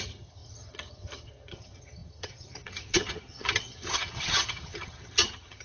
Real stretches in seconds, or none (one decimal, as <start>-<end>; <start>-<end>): none

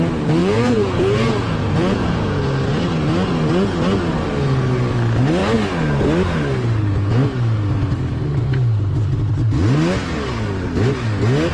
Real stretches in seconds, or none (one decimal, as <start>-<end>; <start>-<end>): 0.0-0.4; 2.4-11.5

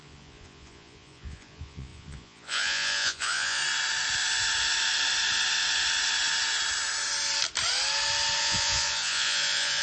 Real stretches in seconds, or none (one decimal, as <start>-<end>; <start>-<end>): 3.6-8.4

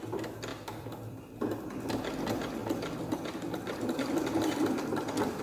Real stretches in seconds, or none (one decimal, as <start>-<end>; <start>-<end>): 0.0-0.5; 1.3-2.6; 4.8-5.4

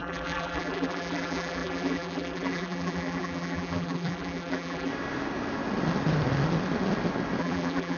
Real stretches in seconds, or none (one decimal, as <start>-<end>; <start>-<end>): 4.9-7.4

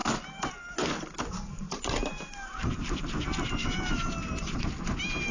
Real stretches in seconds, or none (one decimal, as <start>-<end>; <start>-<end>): 0.0-3.6; 4.1-5.3